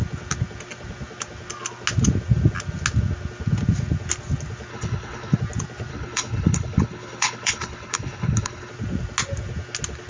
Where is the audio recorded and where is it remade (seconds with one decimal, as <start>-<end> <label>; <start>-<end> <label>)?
0.0-4.7 recorded; 4.7-5.4 remade; 5.4-5.9 recorded; 5.9-8.7 remade; 8.7-10.1 recorded